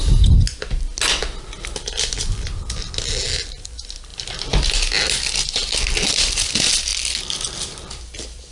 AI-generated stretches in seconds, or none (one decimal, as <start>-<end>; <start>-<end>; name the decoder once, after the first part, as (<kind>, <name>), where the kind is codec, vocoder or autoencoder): 4.1-4.7 (vocoder, BigVGAN v2); 6.9-8.5